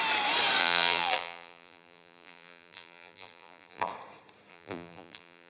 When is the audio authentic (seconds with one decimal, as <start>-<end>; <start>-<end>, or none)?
0.0-0.6; 3.9-4.5